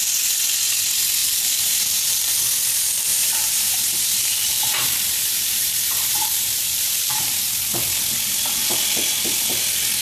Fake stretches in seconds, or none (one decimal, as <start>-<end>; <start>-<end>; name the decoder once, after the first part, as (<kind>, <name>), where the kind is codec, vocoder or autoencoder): 1.2-2.4 (vocoder, BigVGAN v2); 3.1-7.5